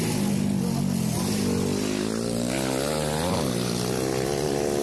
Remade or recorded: recorded